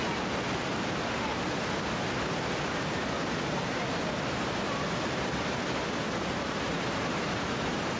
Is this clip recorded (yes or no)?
yes